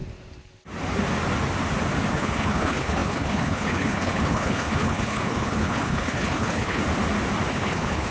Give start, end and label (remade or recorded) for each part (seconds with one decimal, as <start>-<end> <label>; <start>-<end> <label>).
0.0-2.1 recorded; 2.1-6.8 remade; 6.8-7.5 recorded; 7.5-8.1 remade